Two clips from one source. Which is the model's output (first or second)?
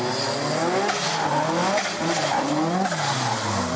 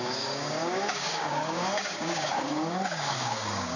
second